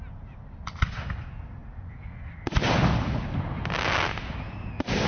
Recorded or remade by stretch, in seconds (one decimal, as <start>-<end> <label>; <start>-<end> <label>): 0.0-5.1 recorded